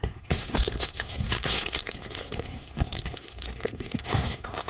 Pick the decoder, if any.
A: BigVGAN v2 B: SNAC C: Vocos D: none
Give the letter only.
B